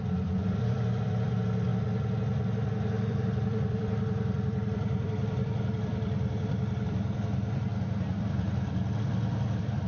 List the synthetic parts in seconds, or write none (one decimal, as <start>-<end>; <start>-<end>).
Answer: 0.0-1.7; 3.1-9.9